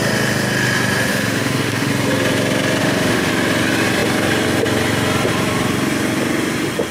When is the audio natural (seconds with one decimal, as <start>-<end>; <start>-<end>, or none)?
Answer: 0.0-1.1; 1.9-2.8; 3.3-6.9